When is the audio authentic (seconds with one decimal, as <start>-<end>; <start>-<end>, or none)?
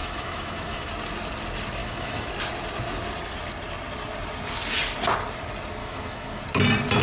0.9-1.8; 2.3-5.8; 6.4-7.0